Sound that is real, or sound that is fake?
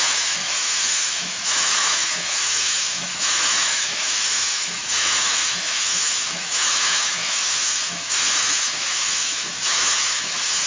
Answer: fake